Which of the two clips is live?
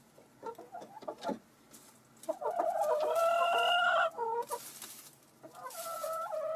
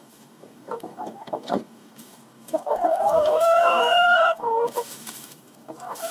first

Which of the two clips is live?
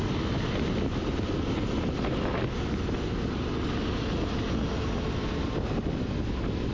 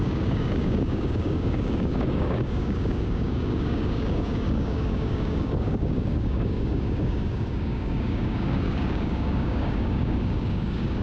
first